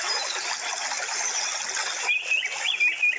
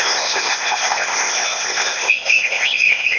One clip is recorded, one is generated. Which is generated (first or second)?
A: second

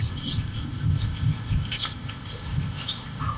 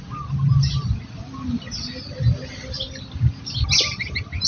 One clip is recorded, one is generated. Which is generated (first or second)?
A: first